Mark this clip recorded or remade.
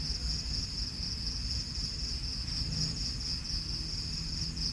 recorded